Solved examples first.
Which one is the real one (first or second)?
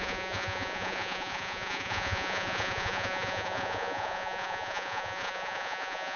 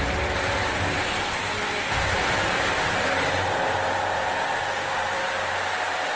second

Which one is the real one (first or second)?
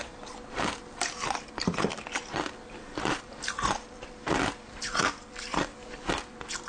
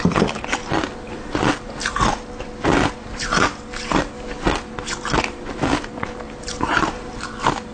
second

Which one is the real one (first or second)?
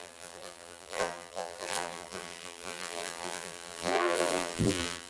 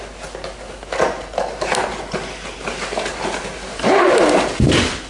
second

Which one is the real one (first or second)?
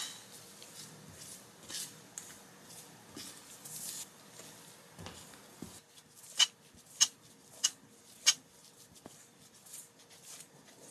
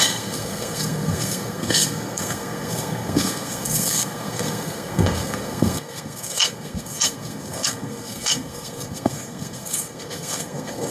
first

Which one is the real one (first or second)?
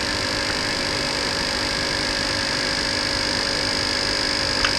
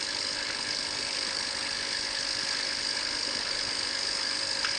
first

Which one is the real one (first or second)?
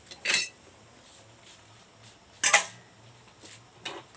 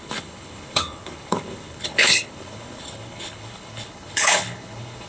first